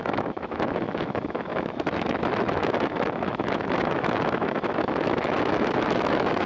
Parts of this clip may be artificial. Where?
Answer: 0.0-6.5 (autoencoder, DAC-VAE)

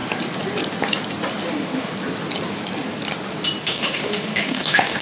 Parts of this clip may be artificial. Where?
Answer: 1.5-1.9 (autoencoder, DAC-VAE); 3.6-5.0

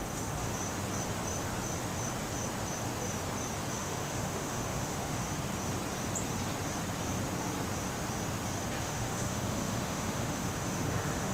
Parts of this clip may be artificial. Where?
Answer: 0.0-0.5 (autoencoder, DAC-VAE); 3.7-5.2; 8.8-11.3